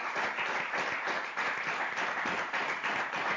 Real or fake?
real